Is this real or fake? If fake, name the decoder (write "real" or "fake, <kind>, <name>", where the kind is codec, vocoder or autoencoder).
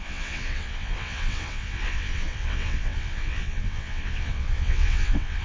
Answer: fake, vocoder, WaveNeXt